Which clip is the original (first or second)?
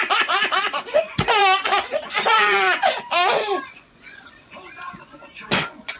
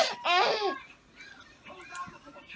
second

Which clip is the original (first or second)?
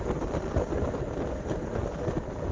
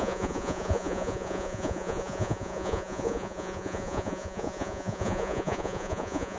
first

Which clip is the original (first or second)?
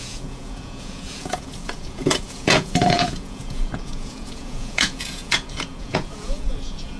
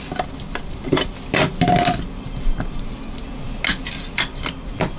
second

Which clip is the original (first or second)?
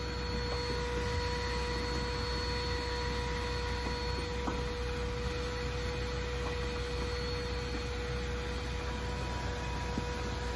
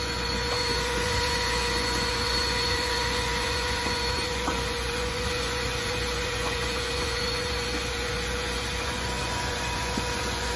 first